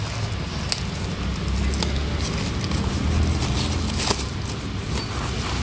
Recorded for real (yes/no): yes